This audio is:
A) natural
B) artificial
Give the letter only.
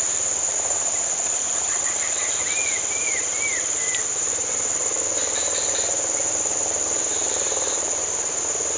B